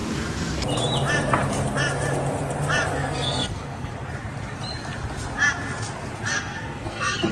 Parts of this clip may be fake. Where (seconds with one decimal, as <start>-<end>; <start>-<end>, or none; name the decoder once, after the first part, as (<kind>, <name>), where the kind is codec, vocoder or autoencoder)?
2.9-3.9 (codec, SNAC); 6.3-7.3